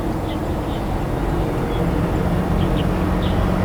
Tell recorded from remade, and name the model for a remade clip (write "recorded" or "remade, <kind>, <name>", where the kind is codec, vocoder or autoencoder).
recorded